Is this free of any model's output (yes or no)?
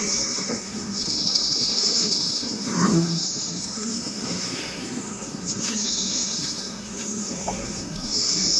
no